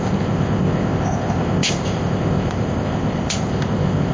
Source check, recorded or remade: remade